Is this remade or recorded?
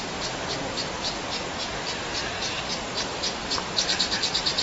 recorded